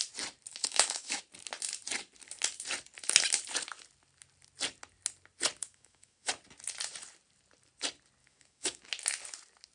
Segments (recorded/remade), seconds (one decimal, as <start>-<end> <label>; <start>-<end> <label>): 0.0-0.5 recorded; 0.5-1.2 remade; 1.2-5.6 recorded; 5.6-6.3 remade; 6.3-8.2 recorded; 8.2-8.9 remade; 8.9-9.7 recorded